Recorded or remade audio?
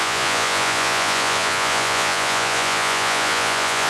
remade